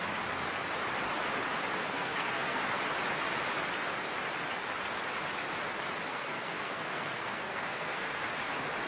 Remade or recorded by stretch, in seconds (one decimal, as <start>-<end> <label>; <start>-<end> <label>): 0.0-1.8 recorded; 1.8-2.8 remade; 2.8-6.1 recorded; 6.1-8.3 remade; 8.3-8.9 recorded